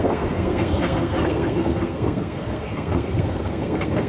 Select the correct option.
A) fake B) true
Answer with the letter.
A